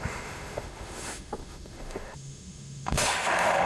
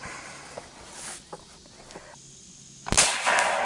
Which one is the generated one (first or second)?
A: first